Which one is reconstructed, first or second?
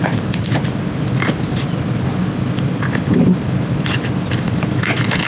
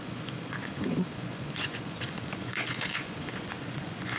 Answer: second